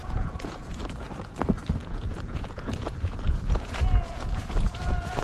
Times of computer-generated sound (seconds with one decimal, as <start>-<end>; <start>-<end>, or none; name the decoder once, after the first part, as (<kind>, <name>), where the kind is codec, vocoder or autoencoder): 0.0-0.8 (vocoder, Vocos); 1.8-5.2